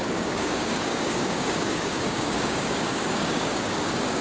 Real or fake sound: fake